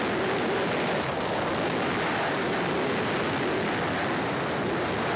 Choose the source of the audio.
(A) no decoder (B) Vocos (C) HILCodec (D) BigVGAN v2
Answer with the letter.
A